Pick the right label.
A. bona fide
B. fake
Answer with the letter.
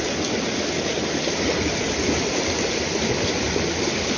A